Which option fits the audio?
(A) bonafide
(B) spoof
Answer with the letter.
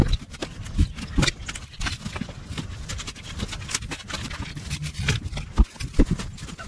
A